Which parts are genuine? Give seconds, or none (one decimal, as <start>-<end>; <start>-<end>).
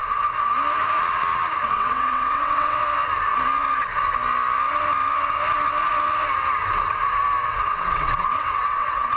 0.0-1.6; 2.8-7.4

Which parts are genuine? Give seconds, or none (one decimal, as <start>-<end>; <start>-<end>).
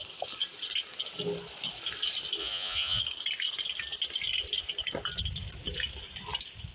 0.0-2.4; 3.0-6.7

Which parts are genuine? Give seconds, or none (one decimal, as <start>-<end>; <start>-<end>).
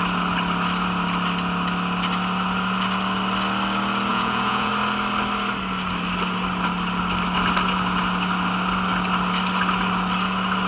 0.0-4.1; 4.7-10.7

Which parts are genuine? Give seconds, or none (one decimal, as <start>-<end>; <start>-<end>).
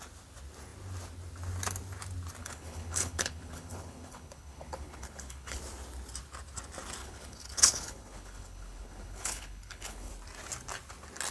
0.0-2.4; 5.6-7.0; 10.1-11.3